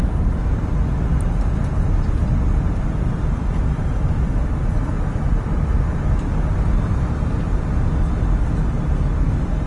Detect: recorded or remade recorded